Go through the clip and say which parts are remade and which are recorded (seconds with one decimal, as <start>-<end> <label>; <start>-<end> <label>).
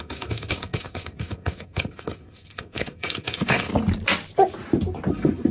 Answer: 0.0-3.7 remade; 3.7-5.1 recorded; 5.1-5.5 remade